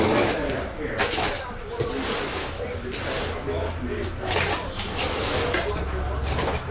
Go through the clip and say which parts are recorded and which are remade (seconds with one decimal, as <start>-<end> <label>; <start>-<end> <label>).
0.0-6.7 recorded